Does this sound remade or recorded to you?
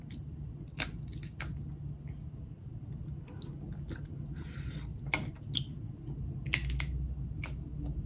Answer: recorded